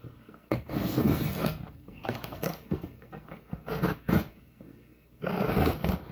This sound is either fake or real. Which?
fake